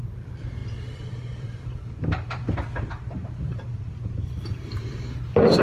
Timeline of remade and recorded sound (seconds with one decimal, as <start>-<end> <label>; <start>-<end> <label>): 0.0-5.6 remade